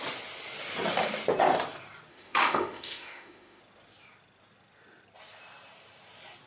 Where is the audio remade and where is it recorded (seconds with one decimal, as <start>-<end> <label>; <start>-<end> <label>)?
0.0-2.1 recorded; 2.1-3.6 remade; 3.6-6.5 recorded